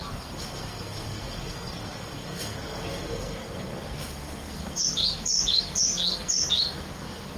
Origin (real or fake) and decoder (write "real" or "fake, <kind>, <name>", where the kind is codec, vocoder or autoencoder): fake, codec, SNAC